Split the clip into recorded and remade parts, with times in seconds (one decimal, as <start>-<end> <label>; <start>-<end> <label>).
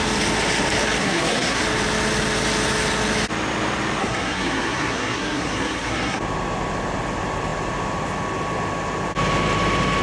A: 0.0-1.0 recorded; 1.0-1.6 remade; 1.6-4.0 recorded; 4.0-6.2 remade; 6.2-10.0 recorded